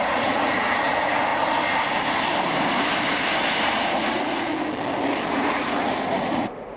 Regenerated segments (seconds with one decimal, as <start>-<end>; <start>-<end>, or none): 0.0-1.3; 3.8-4.5; 5.3-6.8